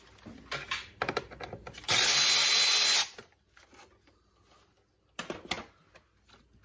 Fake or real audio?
real